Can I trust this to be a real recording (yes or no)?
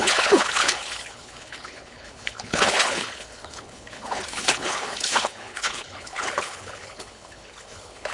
no